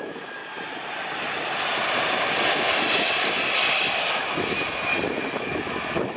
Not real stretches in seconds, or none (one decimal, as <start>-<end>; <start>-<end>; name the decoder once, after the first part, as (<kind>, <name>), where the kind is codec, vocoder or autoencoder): 0.0-0.4 (autoencoder, DAC-VAE); 4.1-4.6; 5.1-6.2